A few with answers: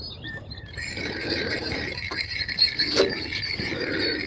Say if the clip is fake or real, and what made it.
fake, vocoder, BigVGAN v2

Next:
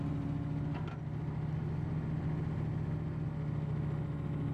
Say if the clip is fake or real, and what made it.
real